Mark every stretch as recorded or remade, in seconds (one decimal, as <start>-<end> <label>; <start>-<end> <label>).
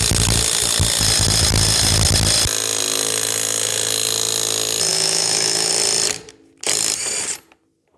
0.0-4.9 recorded; 4.9-5.7 remade; 5.7-8.0 recorded